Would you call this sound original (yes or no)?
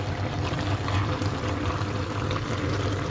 yes